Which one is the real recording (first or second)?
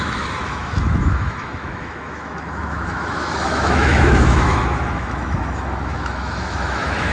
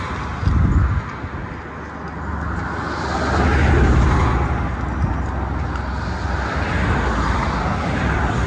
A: second